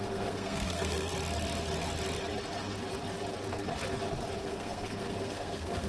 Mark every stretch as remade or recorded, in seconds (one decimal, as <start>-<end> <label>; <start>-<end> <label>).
0.0-1.1 remade; 1.1-4.4 recorded; 4.4-5.9 remade